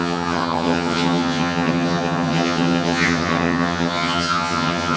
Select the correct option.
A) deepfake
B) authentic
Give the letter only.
A